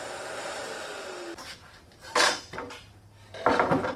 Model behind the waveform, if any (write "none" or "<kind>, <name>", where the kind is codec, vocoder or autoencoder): none